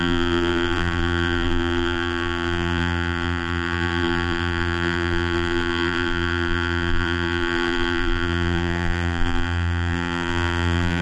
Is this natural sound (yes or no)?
no